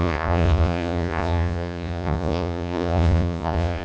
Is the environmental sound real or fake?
fake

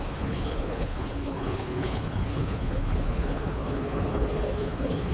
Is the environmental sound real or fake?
fake